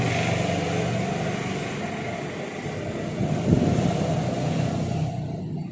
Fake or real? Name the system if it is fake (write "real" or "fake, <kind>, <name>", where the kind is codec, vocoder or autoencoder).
real